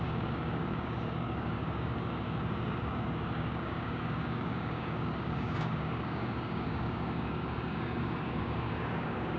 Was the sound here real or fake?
fake